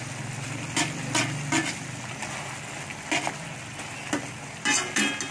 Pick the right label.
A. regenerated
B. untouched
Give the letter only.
B